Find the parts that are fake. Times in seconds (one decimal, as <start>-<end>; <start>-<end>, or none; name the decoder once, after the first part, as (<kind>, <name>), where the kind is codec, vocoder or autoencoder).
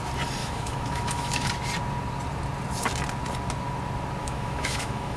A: 0.4-1.5 (autoencoder, DAC-VAE); 4.2-5.2